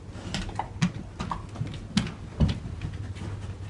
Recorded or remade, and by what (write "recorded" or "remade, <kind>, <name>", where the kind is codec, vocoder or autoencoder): recorded